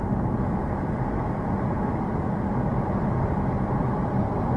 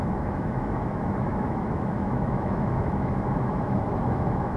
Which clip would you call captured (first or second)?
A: first